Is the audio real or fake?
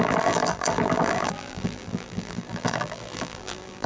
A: fake